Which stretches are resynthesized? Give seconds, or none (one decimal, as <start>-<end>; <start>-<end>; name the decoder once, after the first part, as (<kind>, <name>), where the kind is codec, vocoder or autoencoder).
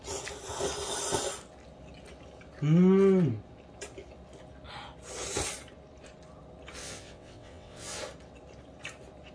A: 6.8-8.0 (vocoder, WaveNeXt)